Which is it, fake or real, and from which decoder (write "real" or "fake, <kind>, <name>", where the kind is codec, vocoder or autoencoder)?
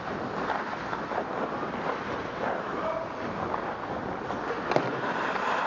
real